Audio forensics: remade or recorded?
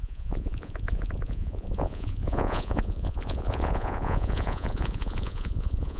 remade